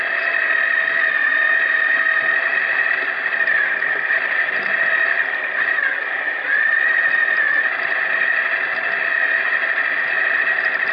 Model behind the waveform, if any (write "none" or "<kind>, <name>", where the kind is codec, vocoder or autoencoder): none